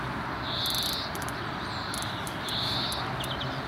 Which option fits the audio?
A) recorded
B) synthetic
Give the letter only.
A